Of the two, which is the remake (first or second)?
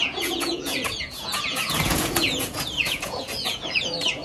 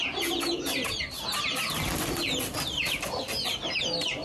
first